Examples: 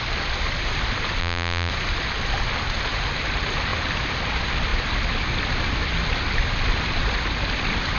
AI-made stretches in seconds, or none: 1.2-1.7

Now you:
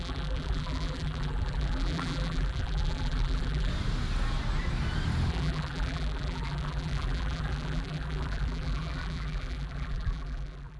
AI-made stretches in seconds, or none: 0.0-3.7; 5.3-10.8